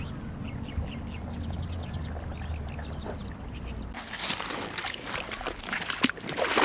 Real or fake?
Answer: real